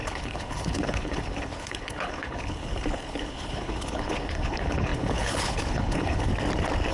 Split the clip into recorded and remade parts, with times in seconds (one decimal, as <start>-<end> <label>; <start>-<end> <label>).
0.0-6.3 remade; 6.3-6.9 recorded